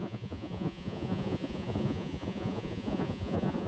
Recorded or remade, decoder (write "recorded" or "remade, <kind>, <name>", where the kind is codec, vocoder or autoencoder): remade, vocoder, Vocos